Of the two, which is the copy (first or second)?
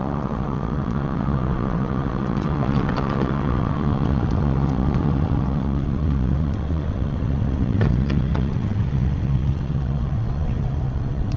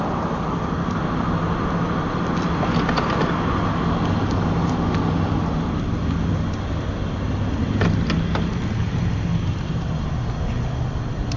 first